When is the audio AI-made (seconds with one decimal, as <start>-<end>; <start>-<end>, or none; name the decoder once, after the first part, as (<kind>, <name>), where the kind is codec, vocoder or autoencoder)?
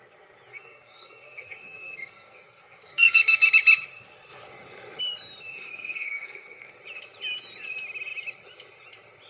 0.5-3.5 (codec, SNAC); 5.5-6.7